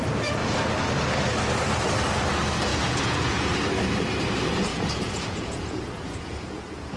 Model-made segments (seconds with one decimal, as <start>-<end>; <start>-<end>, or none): 2.7-3.5; 4.7-6.6